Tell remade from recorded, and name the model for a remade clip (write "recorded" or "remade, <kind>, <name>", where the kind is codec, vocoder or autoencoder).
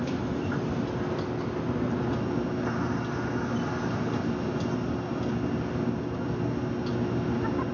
recorded